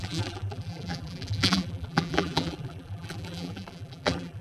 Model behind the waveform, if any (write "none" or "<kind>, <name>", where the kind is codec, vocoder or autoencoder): vocoder, BigVGAN v2